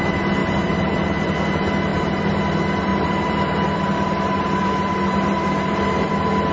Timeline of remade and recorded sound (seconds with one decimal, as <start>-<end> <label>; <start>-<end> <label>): 0.0-0.4 recorded; 0.4-1.3 remade; 1.3-1.9 recorded; 1.9-2.4 remade; 2.4-2.9 recorded; 2.9-6.1 remade; 6.1-6.5 recorded